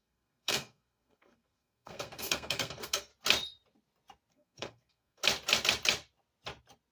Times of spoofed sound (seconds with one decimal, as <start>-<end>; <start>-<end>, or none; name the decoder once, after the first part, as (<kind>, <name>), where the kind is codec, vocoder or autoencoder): 0.0-3.1 (codec, SNAC); 4.3-5.2